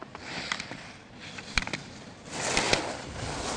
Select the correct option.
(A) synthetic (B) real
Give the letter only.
B